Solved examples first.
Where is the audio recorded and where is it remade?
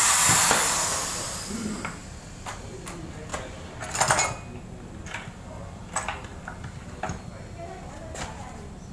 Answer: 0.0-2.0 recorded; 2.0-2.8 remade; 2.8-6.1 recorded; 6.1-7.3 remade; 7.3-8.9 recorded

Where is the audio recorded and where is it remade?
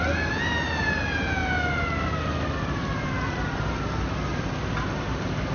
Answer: 0.0-5.5 recorded